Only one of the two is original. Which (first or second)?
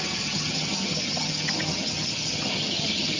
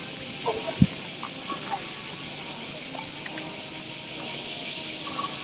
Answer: second